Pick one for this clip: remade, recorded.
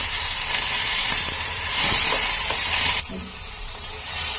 remade